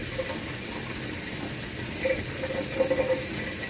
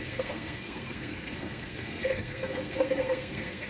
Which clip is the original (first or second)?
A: first